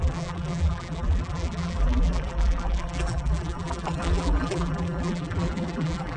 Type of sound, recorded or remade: remade